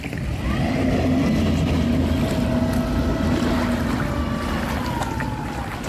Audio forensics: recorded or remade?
recorded